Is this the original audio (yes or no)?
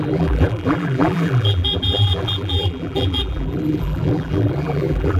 no